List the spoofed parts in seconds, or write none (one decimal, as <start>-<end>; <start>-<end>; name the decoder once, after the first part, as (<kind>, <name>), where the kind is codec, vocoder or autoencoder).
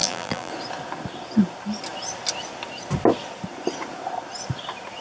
0.0-0.5 (vocoder, BigVGAN v2)